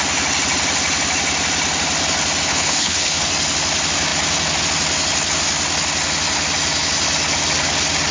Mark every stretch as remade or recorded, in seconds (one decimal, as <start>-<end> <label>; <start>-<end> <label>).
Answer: 0.0-2.5 recorded; 2.5-3.3 remade; 3.3-8.1 recorded